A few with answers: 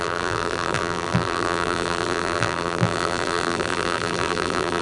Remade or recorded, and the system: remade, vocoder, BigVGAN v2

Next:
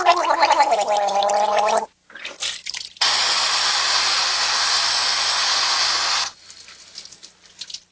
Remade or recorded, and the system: recorded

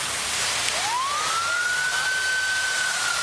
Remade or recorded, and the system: recorded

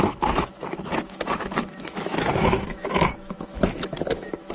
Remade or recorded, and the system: remade, autoencoder, DAC-VAE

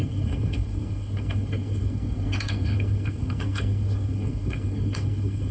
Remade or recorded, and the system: remade, codec, SNAC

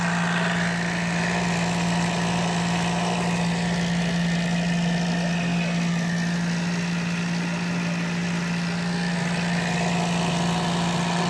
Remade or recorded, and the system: recorded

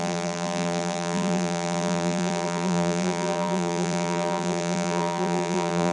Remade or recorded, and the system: remade, vocoder, BigVGAN v2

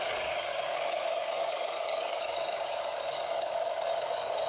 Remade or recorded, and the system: remade, codec, DAC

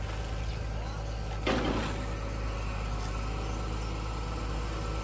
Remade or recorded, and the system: recorded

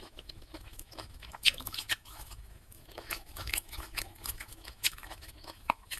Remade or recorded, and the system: remade, autoencoder, DAC-VAE